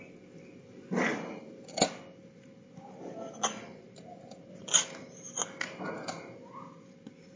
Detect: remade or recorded recorded